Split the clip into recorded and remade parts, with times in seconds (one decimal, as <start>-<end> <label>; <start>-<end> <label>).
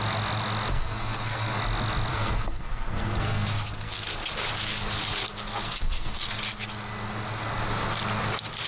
0.0-0.7 recorded; 0.7-1.6 remade; 1.6-2.1 recorded; 2.1-4.3 remade; 4.3-5.5 recorded; 5.5-6.3 remade; 6.3-8.7 recorded